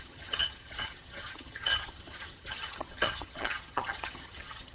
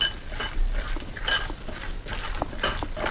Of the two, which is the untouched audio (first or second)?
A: second